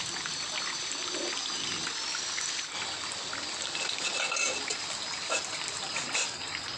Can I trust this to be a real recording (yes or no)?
yes